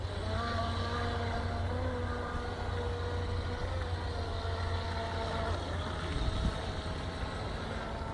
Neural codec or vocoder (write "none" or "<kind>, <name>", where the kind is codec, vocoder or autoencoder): none